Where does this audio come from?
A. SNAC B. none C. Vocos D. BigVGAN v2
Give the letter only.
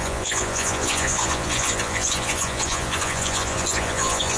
C